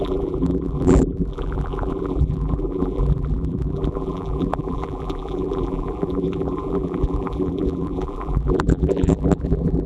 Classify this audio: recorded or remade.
remade